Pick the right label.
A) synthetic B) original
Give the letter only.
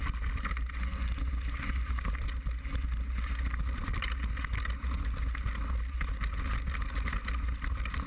B